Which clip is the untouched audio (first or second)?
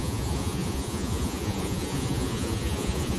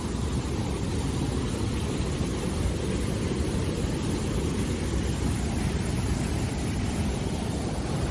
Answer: second